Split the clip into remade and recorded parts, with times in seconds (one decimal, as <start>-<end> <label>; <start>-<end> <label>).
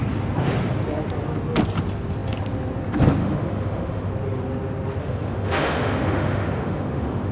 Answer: 0.0-3.2 recorded; 3.2-4.1 remade; 4.1-5.0 recorded; 5.0-7.3 remade